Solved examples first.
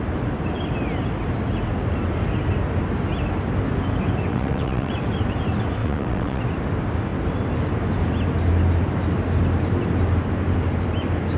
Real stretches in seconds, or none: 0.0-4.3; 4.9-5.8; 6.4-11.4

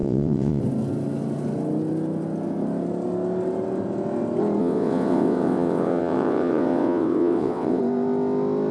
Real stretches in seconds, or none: 0.6-4.6; 7.8-8.7

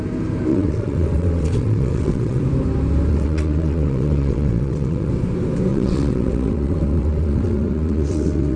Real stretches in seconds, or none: 0.0-0.5; 2.4-3.1; 5.1-5.7

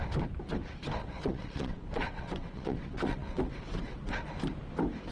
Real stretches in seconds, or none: 0.0-1.0; 4.1-5.1

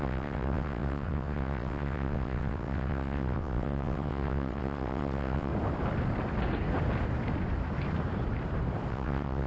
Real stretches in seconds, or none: 5.5-8.9

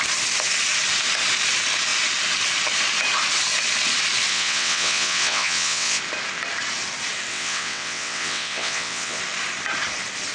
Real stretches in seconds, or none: 0.0-4.3; 6.0-7.3; 9.2-10.3